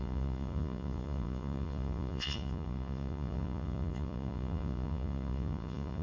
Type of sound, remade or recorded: remade